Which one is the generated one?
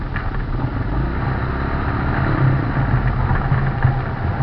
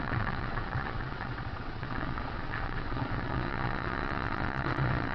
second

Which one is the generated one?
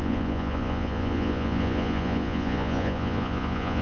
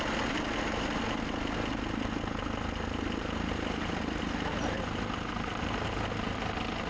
first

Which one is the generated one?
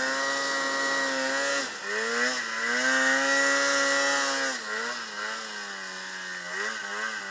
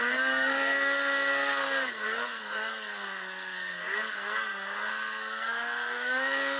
second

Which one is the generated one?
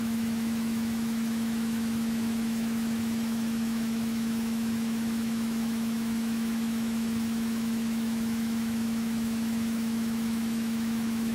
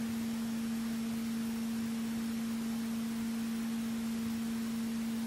first